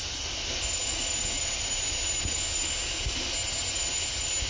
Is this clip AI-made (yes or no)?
no